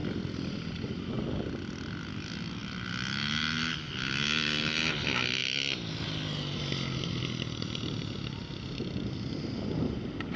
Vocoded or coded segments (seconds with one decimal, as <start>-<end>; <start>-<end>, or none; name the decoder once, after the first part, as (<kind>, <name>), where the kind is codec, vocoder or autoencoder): 0.0-0.9 (vocoder, BigVGAN v2); 2.6-3.3